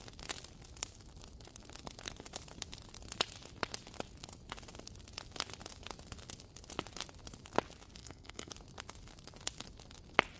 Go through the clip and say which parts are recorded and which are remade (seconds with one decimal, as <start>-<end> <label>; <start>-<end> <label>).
0.0-8.0 recorded; 8.0-8.5 remade; 8.5-10.4 recorded